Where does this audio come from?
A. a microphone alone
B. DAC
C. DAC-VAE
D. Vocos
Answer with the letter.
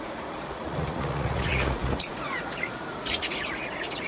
D